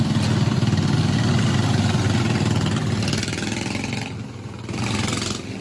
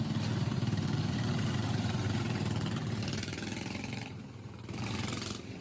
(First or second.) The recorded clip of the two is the first